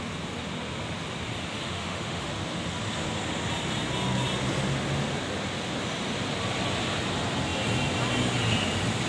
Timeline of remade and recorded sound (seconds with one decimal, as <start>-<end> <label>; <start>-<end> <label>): 0.0-1.5 recorded; 1.5-2.3 remade; 2.3-9.1 recorded